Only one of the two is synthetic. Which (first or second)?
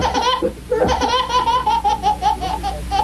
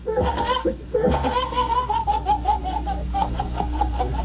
second